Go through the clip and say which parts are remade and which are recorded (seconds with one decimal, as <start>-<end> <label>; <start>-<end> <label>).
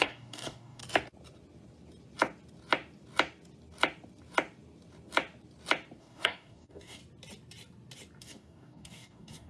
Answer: 0.0-0.8 remade; 0.8-6.0 recorded; 6.0-7.0 remade; 7.0-8.2 recorded; 8.2-9.5 remade